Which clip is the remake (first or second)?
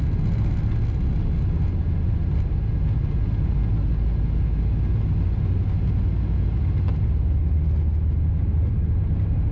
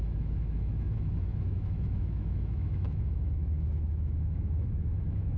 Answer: second